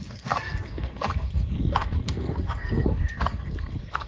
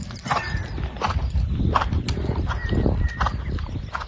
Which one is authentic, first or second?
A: second